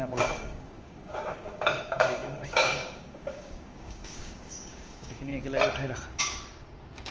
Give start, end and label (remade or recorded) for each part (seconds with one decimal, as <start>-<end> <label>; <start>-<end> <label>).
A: 0.0-5.3 remade; 5.3-6.2 recorded; 6.2-7.1 remade